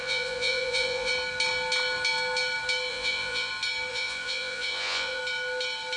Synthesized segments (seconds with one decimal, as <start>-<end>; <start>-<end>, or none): 0.0-1.1; 2.9-3.5; 3.9-5.2